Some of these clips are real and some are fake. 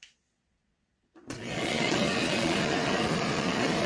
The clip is fake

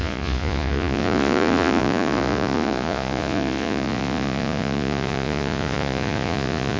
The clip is fake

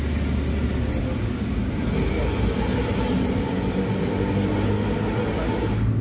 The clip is real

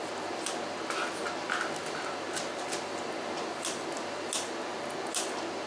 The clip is real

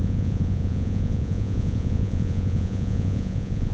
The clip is fake